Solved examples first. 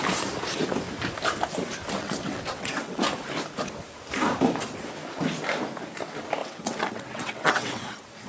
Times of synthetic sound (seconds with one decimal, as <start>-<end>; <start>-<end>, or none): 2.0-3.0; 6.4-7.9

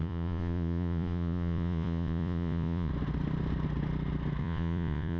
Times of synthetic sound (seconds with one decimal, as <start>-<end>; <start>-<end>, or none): 0.0-2.9; 4.4-5.2

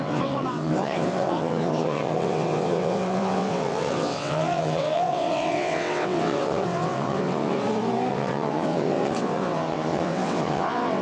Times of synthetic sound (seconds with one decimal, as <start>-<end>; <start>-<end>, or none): 0.0-7.6; 8.1-11.0

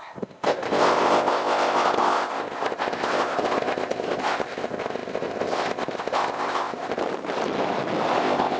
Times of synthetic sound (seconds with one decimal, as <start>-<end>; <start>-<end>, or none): 0.0-7.0; 8.2-8.6

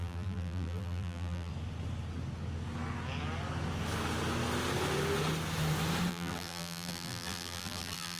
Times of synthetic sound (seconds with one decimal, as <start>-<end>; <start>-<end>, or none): 0.0-1.5; 6.1-8.2